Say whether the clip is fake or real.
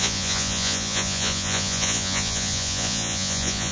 fake